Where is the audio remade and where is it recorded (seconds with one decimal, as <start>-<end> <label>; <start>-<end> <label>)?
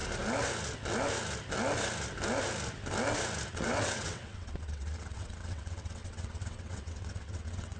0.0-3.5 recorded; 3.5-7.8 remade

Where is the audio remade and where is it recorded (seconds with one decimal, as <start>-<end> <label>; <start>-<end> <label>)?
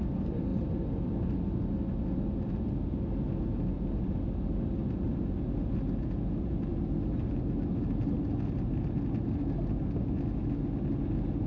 0.0-11.5 recorded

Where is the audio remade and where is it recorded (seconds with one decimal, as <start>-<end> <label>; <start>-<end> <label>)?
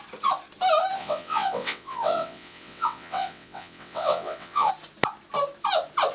0.0-1.0 recorded; 1.0-4.7 remade; 4.7-6.1 recorded